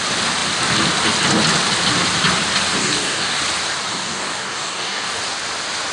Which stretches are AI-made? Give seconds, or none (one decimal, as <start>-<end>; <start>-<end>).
2.8-3.4; 3.9-5.2